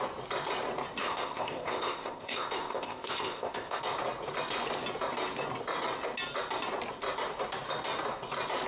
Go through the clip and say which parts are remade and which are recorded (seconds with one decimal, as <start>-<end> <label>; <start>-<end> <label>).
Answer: 0.0-1.0 recorded; 1.0-3.8 remade; 3.8-8.7 recorded